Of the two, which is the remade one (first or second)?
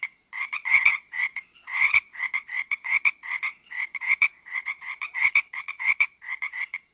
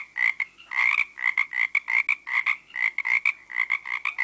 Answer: first